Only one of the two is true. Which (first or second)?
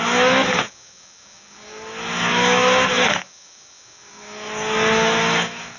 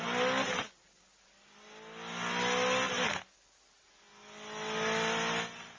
second